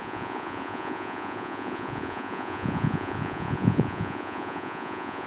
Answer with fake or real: fake